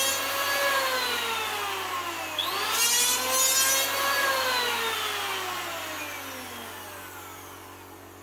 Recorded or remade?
recorded